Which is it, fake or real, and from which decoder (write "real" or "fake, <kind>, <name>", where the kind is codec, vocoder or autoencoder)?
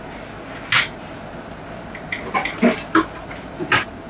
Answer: real